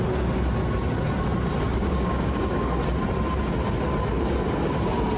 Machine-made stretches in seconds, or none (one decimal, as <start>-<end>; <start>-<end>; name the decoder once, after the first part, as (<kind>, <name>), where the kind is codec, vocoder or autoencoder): 1.7-2.8 (codec, DAC)